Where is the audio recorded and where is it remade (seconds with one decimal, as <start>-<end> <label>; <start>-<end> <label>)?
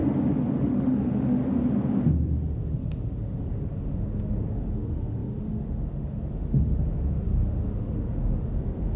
0.0-0.6 recorded; 0.6-1.4 remade; 1.4-2.4 recorded; 2.4-9.0 remade